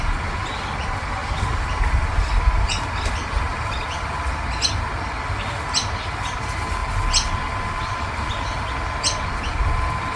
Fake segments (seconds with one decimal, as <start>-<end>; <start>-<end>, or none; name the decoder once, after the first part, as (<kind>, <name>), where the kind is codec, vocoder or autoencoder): 1.2-2.8 (vocoder, BigVGAN v2)